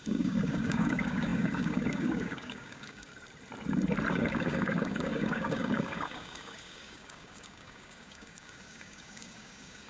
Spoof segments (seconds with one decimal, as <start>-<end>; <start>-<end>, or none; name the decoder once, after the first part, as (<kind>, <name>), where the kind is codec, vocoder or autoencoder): 0.0-3.1 (codec, DAC); 4.1-9.9